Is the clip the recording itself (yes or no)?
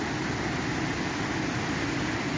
yes